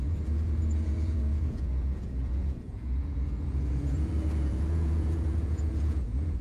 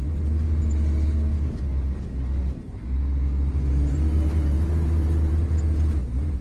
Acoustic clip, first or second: second